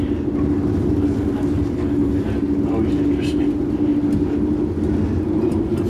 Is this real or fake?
real